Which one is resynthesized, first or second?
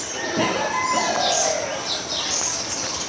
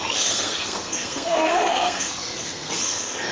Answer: second